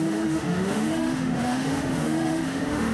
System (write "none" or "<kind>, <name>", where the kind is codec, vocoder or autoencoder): autoencoder, DAC-VAE